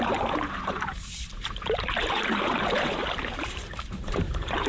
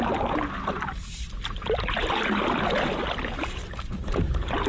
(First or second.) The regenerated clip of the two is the first